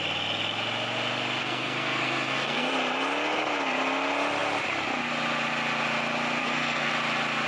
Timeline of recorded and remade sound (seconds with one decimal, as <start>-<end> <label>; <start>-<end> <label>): 0.0-1.4 recorded; 1.4-2.7 remade; 2.7-6.4 recorded; 6.4-6.9 remade; 6.9-7.5 recorded